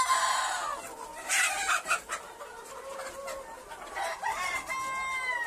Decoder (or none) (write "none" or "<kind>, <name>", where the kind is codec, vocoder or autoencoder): none